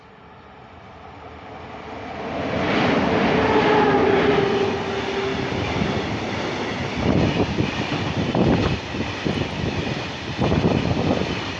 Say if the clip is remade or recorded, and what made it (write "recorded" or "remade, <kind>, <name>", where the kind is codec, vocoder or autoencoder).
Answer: recorded